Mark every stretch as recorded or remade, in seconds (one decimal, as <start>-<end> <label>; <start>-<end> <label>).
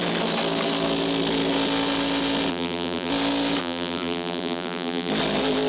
0.0-2.5 recorded; 2.5-3.1 remade; 3.1-3.6 recorded; 3.6-5.1 remade; 5.1-5.7 recorded